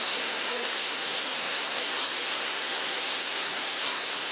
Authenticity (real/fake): fake